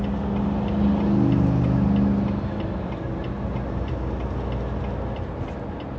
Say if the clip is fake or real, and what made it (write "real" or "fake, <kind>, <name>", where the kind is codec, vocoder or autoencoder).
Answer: real